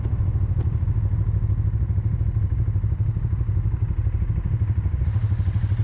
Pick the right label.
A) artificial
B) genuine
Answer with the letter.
B